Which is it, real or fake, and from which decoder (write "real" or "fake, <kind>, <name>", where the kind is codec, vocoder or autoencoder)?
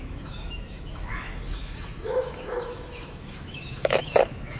fake, autoencoder, DAC-VAE